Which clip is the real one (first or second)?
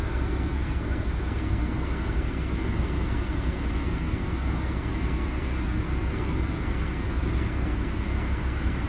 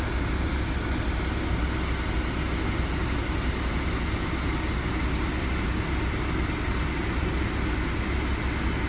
second